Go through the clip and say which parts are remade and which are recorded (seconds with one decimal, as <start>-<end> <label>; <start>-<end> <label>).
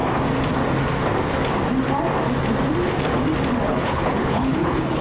0.0-3.7 recorded; 3.7-5.0 remade